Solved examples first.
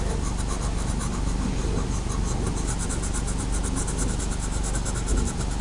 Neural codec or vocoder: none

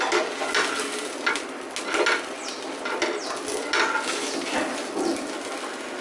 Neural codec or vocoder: none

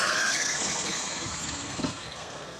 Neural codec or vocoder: codec, SNAC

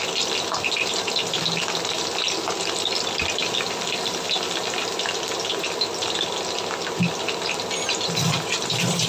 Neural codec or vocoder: none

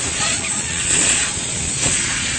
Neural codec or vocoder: vocoder, Vocos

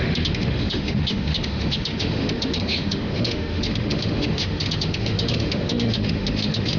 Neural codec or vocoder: autoencoder, DAC-VAE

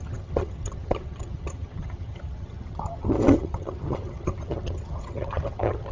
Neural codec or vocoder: vocoder, HiFi-GAN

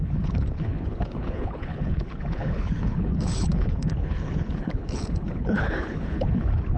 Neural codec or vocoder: codec, HILCodec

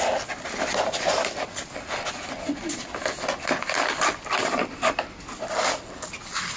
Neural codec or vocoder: none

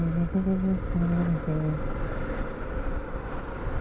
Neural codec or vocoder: none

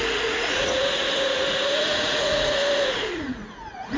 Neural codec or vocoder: vocoder, Vocos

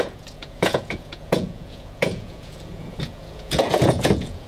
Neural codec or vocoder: vocoder, Vocos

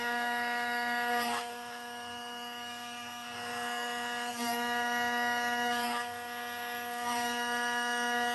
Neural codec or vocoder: codec, DAC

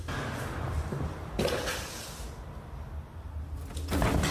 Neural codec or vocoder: none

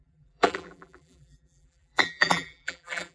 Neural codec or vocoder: vocoder, BigVGAN v2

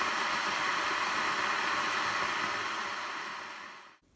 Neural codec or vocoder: none